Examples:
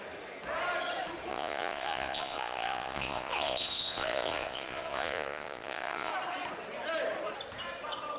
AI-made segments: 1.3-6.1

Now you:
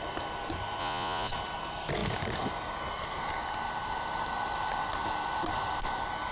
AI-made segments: 0.8-1.3

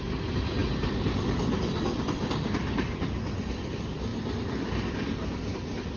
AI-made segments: none